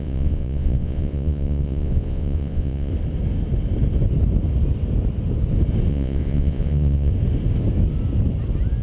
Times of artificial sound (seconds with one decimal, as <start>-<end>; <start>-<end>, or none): 0.0-2.9; 5.9-7.1